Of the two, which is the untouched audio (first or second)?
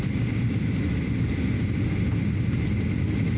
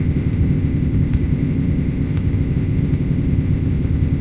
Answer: first